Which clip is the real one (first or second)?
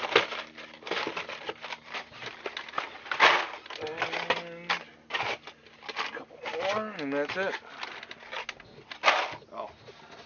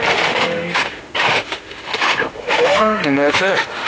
first